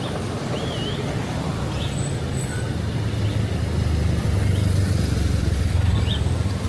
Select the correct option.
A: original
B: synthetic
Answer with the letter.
A